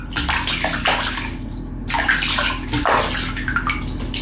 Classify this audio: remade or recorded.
recorded